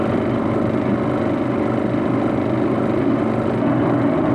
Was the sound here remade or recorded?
recorded